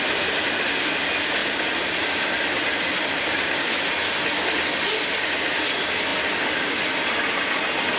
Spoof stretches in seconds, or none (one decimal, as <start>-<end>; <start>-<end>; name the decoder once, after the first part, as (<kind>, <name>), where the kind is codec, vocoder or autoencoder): none